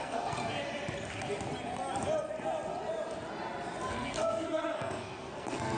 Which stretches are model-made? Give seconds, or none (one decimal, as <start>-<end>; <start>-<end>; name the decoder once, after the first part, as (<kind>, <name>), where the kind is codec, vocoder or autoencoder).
0.0-0.4 (codec, SNAC); 3.9-5.8